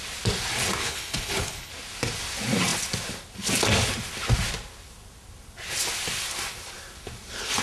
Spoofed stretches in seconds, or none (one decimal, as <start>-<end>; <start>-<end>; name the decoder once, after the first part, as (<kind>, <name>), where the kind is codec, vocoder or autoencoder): 0.8-1.7 (codec, HILCodec)